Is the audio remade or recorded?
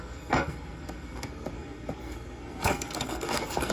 remade